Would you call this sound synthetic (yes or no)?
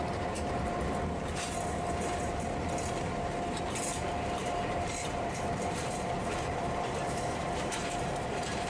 yes